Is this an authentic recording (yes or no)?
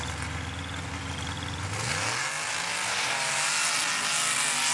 yes